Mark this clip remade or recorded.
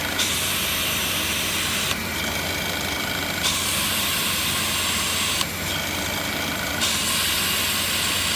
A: recorded